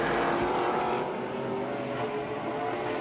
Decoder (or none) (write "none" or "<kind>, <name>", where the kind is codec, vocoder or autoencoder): none